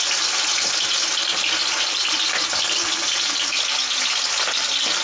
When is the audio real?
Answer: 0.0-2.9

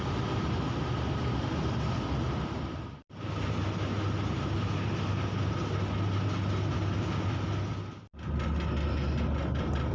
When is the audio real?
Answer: 7.7-9.9

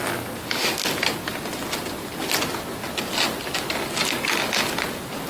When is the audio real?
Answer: 0.0-5.3

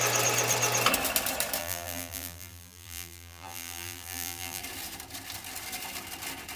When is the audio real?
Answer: 0.0-1.6; 4.6-6.6

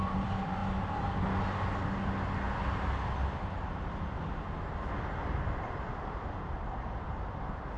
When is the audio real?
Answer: 0.6-5.0

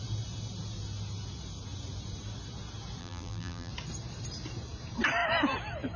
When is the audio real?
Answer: 0.0-3.0; 3.7-6.0

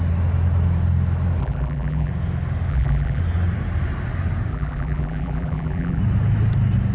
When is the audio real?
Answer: 0.0-1.4; 2.1-2.7; 3.2-4.5; 6.0-6.9